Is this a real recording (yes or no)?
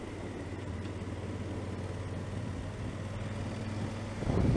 yes